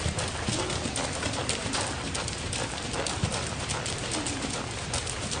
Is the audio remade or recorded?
recorded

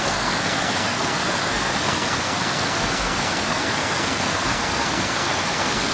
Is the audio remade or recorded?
remade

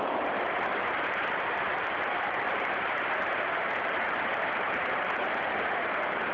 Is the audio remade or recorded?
recorded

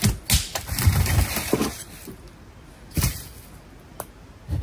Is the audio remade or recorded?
recorded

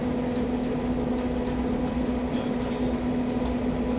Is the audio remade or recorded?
recorded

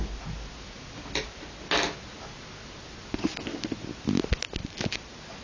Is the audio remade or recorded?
recorded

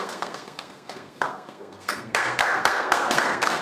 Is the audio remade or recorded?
remade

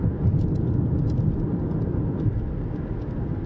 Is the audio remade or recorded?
recorded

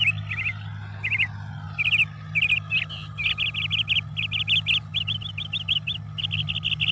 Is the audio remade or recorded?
recorded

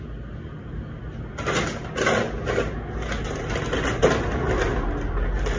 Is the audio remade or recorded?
recorded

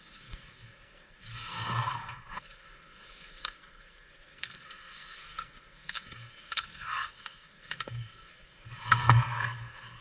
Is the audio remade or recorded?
remade